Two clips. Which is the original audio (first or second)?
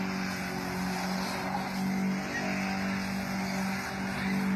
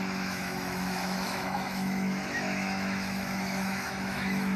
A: first